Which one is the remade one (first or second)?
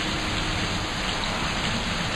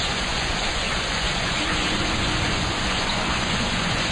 second